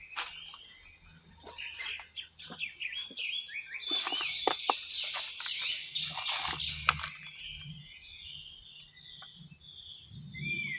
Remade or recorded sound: recorded